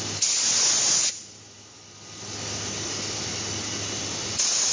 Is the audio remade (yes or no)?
no